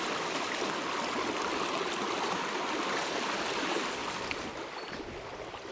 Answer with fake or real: real